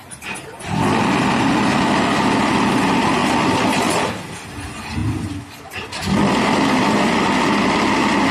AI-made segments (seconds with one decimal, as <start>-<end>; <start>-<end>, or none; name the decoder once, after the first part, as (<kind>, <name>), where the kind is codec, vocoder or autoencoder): none

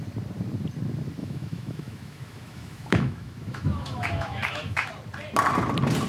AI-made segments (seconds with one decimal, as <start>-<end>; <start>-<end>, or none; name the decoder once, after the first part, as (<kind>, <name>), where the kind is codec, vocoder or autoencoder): 1.2-4.9 (autoencoder, DAC-VAE)